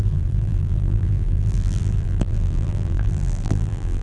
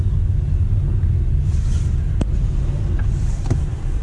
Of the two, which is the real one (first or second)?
second